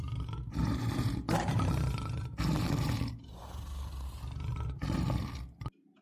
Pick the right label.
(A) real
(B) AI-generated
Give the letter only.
B